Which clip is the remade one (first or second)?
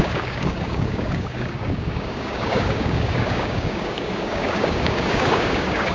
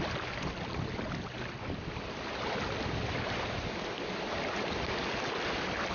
first